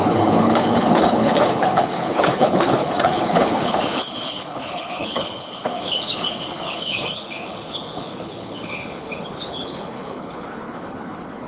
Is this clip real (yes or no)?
no